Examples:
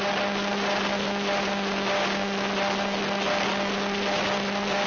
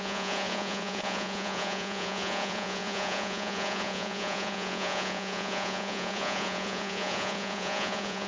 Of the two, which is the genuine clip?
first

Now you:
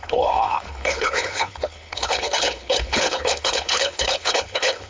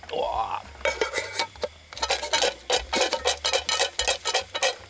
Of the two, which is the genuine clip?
second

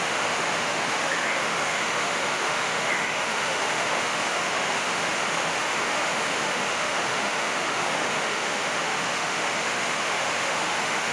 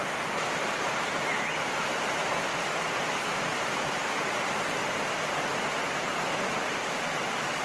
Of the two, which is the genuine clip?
second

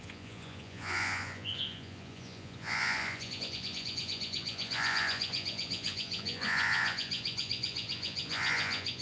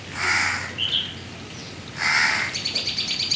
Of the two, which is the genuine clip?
second